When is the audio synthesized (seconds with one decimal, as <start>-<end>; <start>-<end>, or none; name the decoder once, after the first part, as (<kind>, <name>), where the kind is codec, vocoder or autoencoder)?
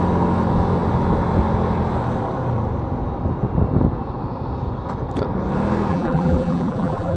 5.9-7.2 (vocoder, BigVGAN v2)